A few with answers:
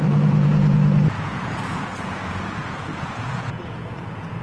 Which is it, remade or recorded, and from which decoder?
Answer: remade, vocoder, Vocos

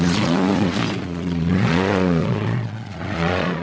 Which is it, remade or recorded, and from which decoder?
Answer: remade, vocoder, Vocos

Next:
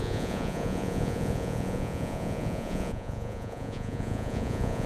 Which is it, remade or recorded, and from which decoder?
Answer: remade, vocoder, Vocos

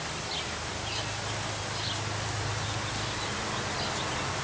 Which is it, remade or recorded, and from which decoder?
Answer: recorded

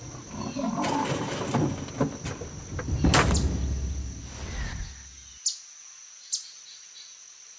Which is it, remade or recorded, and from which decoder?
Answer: recorded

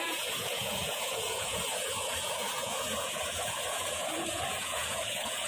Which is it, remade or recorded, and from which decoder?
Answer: remade, vocoder, Vocos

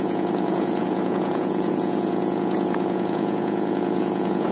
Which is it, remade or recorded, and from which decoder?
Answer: remade, vocoder, Vocos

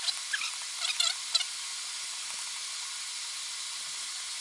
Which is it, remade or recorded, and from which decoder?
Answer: recorded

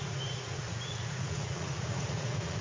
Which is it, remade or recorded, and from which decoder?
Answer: remade, vocoder, Vocos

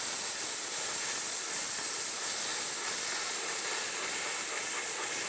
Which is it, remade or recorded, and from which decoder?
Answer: recorded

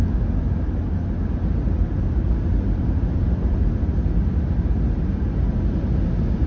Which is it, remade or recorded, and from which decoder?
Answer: recorded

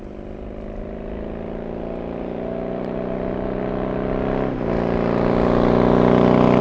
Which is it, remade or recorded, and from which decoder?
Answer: recorded